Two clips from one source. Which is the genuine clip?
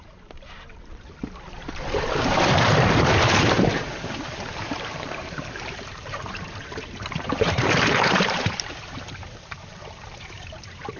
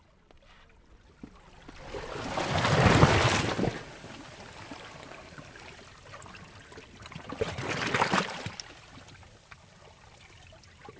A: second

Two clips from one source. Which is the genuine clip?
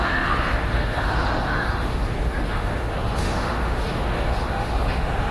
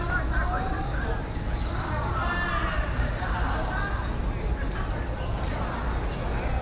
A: second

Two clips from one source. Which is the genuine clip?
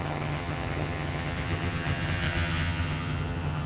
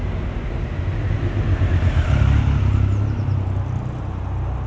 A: second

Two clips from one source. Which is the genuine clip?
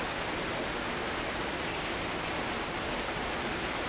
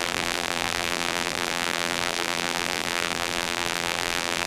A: first